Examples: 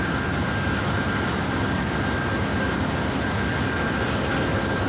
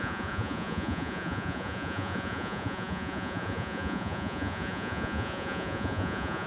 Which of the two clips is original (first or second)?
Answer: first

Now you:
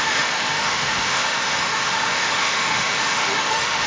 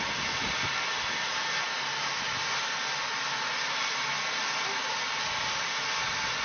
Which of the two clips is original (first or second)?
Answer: second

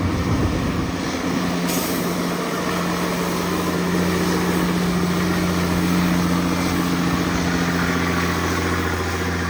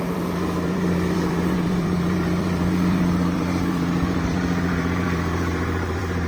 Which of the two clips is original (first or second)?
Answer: first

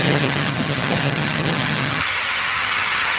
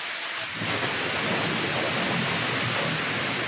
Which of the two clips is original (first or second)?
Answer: second